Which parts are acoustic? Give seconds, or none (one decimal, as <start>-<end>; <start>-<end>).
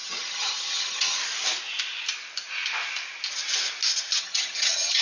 1.2-4.2